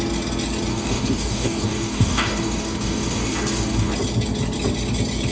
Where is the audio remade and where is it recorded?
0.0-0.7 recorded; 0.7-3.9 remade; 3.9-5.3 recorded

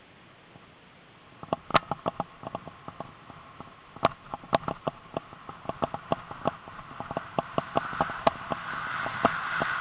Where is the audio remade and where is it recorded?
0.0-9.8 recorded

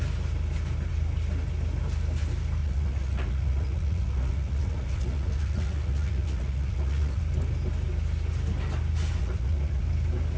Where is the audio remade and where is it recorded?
0.0-2.6 recorded; 2.6-7.2 remade; 7.2-9.2 recorded; 9.2-9.8 remade; 9.8-10.4 recorded

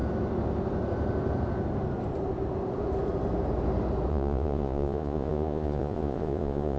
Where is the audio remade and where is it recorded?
0.0-4.1 recorded; 4.1-6.8 remade

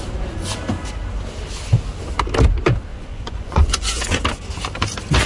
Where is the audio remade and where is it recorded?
0.0-2.9 recorded; 2.9-4.2 remade; 4.2-5.3 recorded